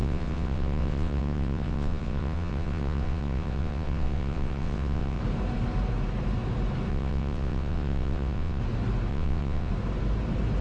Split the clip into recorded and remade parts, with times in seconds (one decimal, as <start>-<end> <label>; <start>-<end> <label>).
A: 0.0-5.2 remade; 5.2-6.9 recorded; 6.9-8.6 remade; 8.6-9.1 recorded; 9.1-9.7 remade; 9.7-10.6 recorded